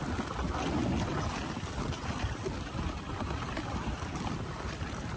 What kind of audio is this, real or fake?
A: real